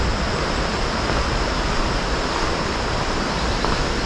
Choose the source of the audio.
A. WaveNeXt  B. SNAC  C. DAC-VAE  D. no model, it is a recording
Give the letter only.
D